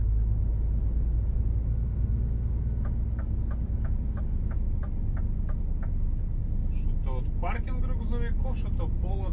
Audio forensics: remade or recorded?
recorded